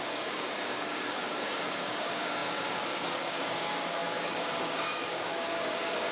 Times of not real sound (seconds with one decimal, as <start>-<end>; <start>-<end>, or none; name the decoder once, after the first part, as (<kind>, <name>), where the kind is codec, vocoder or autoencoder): 0.0-6.1 (codec, DAC)